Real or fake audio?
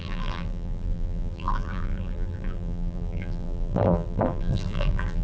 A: fake